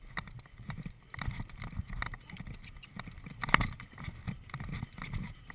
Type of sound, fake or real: real